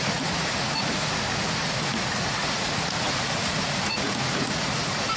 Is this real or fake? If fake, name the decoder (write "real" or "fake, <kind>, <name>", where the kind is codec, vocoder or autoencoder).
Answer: fake, vocoder, Vocos